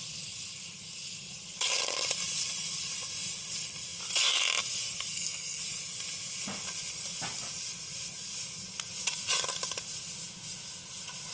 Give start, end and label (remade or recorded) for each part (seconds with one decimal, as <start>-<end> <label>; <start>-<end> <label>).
0.0-5.1 recorded; 5.1-5.6 remade; 5.6-11.3 recorded